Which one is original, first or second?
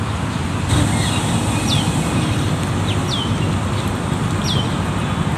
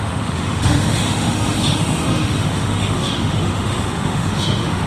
first